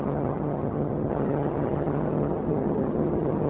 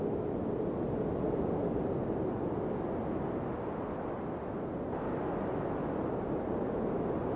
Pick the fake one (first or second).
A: first